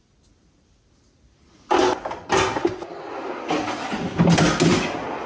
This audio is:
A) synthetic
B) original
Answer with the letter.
B